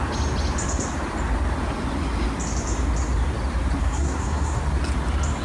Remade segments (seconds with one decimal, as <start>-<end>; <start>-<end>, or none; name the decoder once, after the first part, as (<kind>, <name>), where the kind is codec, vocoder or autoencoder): 3.8-4.6 (codec, SNAC)